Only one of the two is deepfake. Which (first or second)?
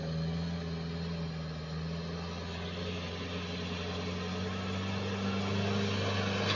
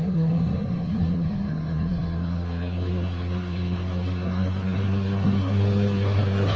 second